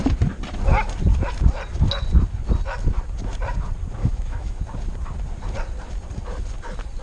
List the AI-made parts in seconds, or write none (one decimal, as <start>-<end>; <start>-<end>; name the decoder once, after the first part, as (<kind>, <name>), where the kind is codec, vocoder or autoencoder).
4.0-4.6 (autoencoder, DAC-VAE)